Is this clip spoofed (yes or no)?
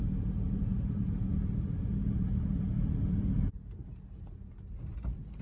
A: yes